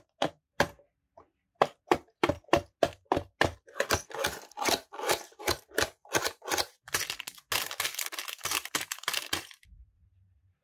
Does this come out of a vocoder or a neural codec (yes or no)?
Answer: no